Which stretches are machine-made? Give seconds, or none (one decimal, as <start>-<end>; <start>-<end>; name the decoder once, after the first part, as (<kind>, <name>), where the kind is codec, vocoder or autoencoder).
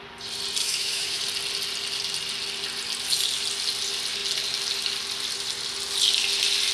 0.6-1.2 (autoencoder, DAC-VAE)